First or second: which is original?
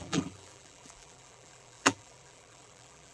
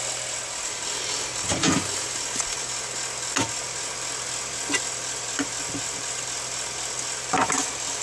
second